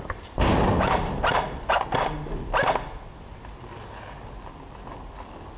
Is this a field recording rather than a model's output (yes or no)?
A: yes